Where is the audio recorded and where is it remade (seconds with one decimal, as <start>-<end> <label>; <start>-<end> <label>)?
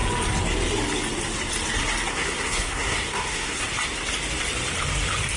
0.0-2.1 recorded; 2.1-3.6 remade; 3.6-5.4 recorded